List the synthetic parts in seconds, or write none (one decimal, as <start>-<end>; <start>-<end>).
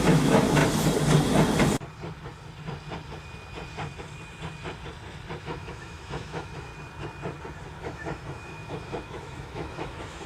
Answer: 0.0-0.6; 5.4-6.7; 7.8-10.3